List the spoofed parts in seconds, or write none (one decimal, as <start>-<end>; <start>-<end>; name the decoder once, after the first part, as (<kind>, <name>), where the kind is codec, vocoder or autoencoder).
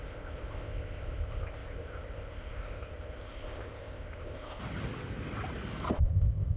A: 0.0-4.6 (codec, ZipCodec); 5.9-6.6